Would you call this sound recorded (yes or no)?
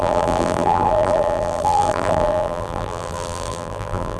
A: no